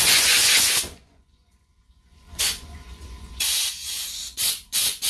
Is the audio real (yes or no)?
no